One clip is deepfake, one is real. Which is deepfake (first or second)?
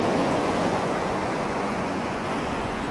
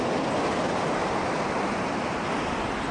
first